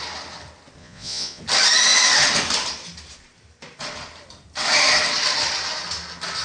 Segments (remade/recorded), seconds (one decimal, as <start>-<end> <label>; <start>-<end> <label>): 0.0-0.8 recorded; 0.8-1.4 remade; 1.4-6.4 recorded